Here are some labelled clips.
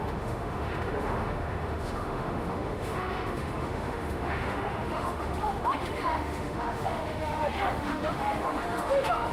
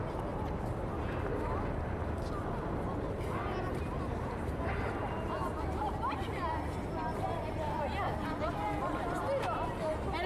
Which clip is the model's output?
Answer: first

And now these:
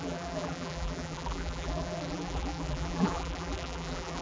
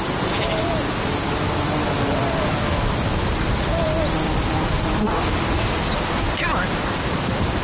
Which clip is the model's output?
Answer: first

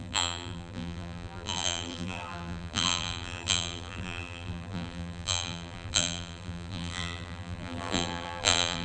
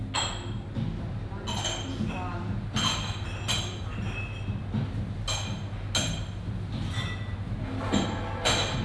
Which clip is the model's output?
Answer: first